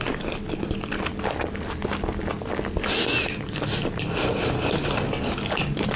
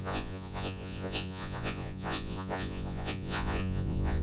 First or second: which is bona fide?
first